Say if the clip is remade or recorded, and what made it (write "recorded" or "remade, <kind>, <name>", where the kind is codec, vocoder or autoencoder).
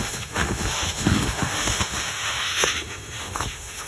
remade, autoencoder, DAC-VAE